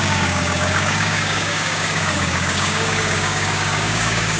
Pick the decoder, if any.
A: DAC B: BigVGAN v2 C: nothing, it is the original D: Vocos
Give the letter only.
A